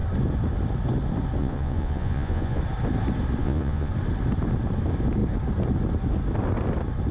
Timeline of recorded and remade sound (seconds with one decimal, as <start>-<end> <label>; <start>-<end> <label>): 0.0-1.4 recorded; 1.4-2.6 remade; 2.6-3.4 recorded; 3.4-3.9 remade; 3.9-7.1 recorded